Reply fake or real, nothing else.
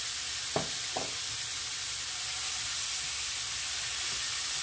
real